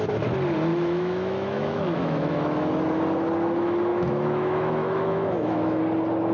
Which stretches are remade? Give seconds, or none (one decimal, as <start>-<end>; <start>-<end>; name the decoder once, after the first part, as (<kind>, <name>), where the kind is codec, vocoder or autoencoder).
0.7-2.7 (autoencoder, DAC-VAE); 3.9-5.8

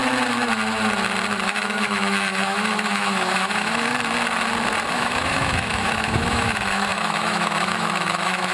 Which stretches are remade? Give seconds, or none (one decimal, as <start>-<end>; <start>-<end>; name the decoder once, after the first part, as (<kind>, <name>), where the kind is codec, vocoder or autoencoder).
1.4-3.9 (autoencoder, DAC-VAE); 4.9-8.5

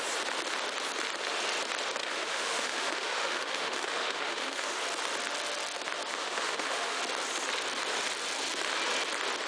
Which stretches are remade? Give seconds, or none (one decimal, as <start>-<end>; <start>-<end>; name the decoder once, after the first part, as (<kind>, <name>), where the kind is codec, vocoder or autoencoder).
2.0-4.8 (autoencoder, DAC-VAE); 6.2-7.0

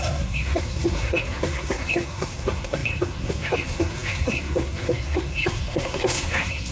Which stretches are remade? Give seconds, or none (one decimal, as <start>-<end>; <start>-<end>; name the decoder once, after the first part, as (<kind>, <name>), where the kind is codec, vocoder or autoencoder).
0.0-6.7 (codec, SNAC)